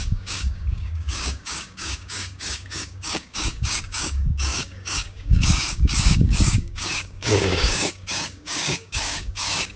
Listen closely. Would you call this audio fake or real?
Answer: fake